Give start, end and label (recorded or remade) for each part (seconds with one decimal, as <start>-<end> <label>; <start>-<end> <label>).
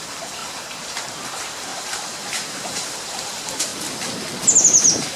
0.0-3.7 remade; 3.7-5.2 recorded